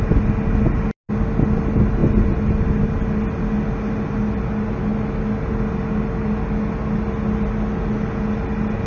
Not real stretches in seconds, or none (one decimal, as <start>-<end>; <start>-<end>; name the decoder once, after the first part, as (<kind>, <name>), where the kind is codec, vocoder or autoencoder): none